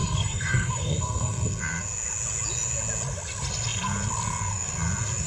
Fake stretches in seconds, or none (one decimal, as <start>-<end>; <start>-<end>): 0.0-1.6